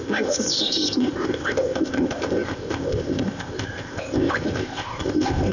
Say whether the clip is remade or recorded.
remade